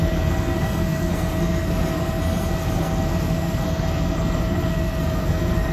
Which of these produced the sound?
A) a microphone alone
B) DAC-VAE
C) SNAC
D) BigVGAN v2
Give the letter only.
C